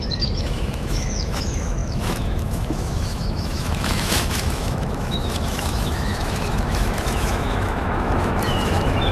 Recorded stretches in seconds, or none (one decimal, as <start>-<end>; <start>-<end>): none